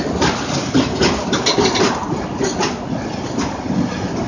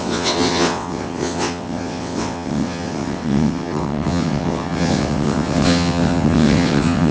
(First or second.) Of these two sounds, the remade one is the second